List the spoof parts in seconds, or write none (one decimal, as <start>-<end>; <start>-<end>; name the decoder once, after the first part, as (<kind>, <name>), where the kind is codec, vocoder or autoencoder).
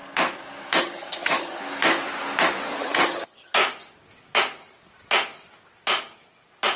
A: 0.8-1.6 (vocoder, HiFi-GAN); 2.7-3.6